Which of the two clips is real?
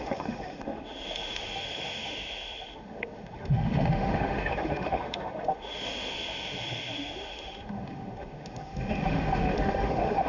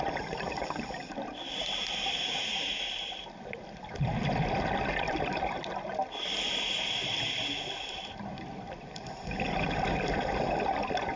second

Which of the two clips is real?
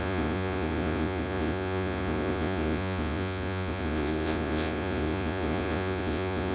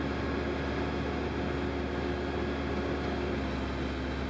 second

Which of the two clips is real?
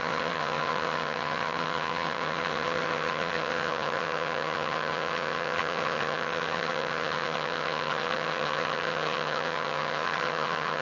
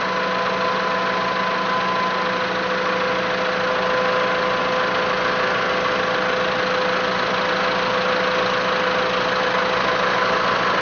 second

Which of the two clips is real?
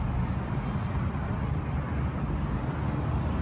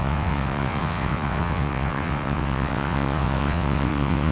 first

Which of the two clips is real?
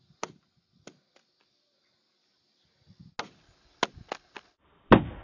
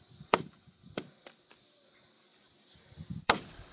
first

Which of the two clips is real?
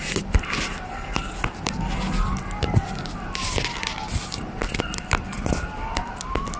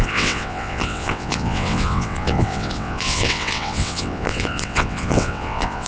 first